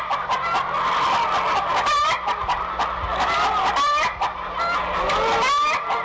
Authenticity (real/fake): real